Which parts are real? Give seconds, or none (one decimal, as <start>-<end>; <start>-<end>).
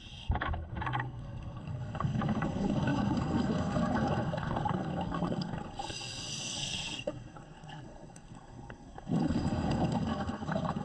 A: none